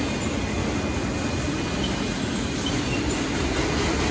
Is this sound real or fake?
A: real